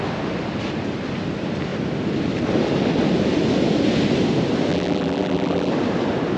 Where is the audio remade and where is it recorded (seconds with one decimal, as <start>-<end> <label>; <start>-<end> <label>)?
0.0-4.7 recorded; 4.7-5.7 remade; 5.7-6.4 recorded